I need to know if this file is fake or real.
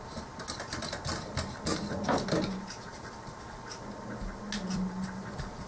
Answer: real